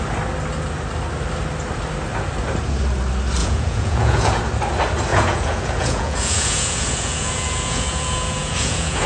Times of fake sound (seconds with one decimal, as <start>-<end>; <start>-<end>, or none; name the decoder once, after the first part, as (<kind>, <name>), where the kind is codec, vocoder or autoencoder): 3.4-4.4 (vocoder, Vocos); 5.1-9.1